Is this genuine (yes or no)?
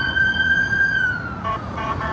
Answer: no